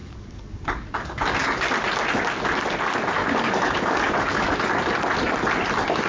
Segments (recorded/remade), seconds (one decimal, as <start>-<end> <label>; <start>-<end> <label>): 0.0-1.7 remade; 1.7-3.2 recorded; 3.2-4.6 remade; 4.6-6.1 recorded